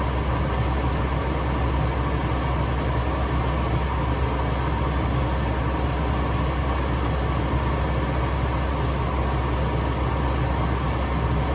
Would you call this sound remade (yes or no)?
no